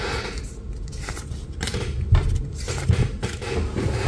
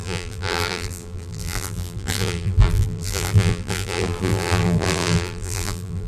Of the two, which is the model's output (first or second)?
second